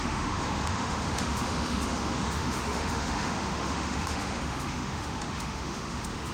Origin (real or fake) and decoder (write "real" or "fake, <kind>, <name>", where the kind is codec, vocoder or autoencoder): fake, autoencoder, DAC-VAE